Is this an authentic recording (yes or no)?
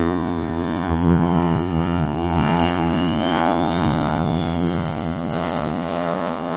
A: no